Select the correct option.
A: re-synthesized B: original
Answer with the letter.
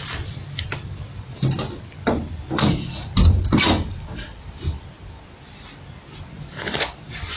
B